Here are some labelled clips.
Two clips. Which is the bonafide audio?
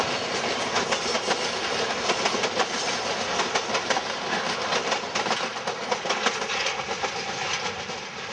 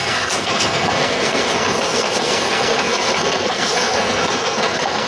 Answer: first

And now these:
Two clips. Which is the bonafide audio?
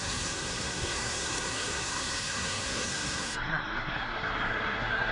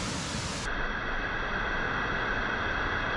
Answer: second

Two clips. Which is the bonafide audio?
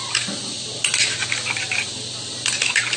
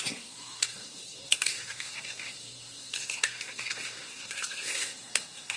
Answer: first